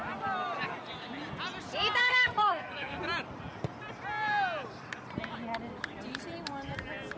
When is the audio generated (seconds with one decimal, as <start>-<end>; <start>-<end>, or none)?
2.0-3.0